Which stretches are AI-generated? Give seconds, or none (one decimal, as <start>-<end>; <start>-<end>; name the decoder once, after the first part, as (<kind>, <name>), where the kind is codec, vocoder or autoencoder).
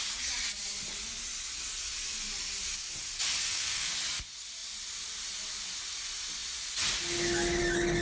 3.4-3.9 (codec, SNAC)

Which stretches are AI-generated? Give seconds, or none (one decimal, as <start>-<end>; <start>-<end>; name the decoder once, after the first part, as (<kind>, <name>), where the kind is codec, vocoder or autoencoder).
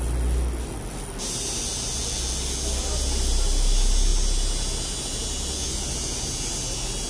none